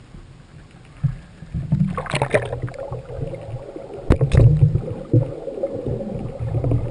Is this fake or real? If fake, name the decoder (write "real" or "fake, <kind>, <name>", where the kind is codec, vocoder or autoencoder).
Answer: real